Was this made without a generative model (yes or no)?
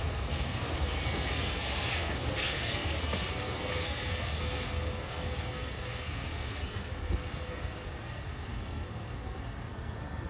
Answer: no